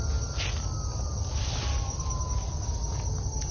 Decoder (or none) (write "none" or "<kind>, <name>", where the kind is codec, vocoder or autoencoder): none